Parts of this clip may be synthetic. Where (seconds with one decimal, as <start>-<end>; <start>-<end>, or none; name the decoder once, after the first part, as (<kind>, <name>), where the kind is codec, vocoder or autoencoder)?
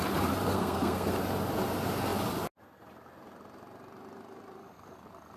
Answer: 0.5-1.1 (codec, SNAC)